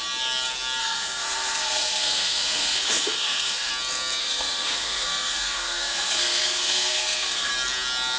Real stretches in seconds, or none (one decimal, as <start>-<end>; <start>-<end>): 0.0-0.8; 3.7-4.2; 7.5-8.2